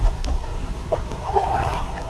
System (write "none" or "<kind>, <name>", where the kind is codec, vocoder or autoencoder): codec, SNAC